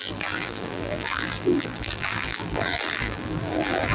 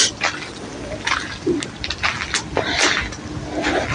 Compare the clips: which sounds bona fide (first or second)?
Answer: second